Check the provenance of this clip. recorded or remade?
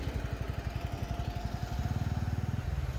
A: recorded